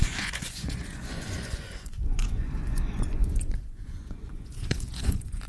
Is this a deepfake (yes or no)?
yes